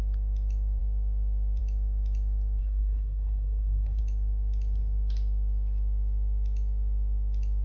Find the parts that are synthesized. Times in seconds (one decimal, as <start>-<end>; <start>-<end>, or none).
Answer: 2.6-4.0